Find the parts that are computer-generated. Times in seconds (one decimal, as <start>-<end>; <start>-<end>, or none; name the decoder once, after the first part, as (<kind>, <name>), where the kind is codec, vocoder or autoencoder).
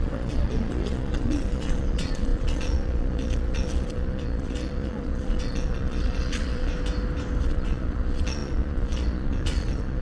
0.0-6.7 (vocoder, Vocos); 7.4-10.0